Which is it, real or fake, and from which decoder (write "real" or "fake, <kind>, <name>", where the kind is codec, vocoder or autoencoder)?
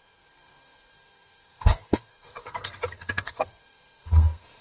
fake, codec, SNAC